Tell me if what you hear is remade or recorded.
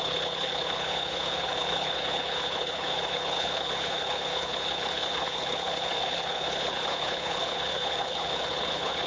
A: remade